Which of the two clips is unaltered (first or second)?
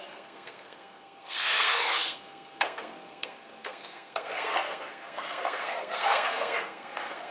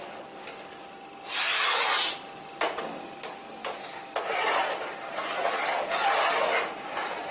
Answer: second